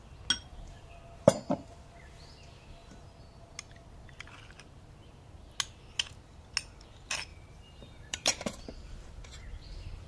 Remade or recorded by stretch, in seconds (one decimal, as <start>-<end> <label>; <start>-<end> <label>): 0.0-0.4 recorded; 0.4-1.0 remade; 1.0-7.3 recorded; 7.3-8.6 remade; 8.6-10.1 recorded